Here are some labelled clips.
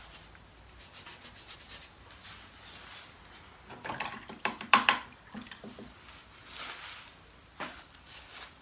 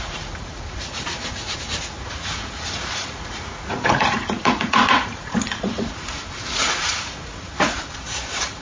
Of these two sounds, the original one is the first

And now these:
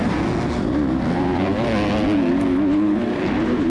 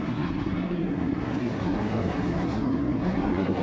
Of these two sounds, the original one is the first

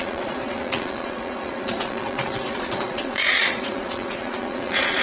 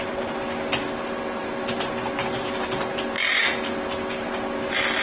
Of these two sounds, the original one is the second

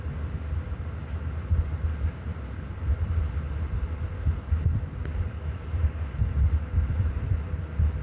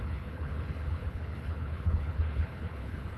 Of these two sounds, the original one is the first